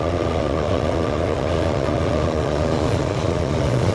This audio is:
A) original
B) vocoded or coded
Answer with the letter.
B